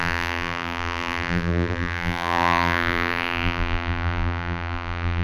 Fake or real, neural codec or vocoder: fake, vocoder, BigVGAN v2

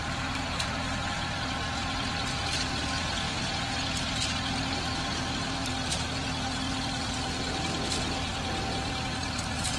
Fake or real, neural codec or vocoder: fake, vocoder, BigVGAN v2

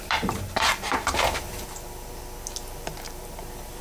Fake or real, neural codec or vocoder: fake, vocoder, BigVGAN v2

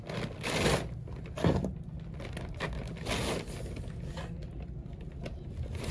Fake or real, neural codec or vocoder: real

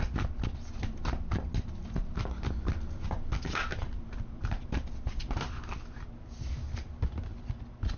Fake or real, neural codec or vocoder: real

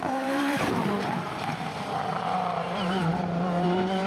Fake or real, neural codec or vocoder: fake, vocoder, BigVGAN v2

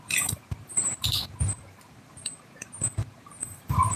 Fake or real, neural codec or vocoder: fake, vocoder, BigVGAN v2